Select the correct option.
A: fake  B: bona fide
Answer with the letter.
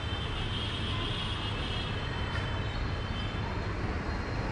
B